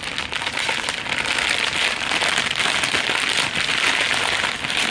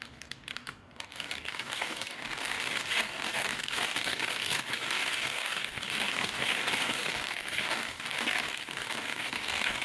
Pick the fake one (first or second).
second